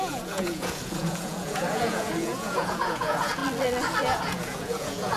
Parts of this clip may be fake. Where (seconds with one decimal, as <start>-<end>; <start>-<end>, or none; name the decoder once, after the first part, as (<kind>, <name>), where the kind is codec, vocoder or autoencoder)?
0.0-3.4 (vocoder, Vocos); 4.0-5.2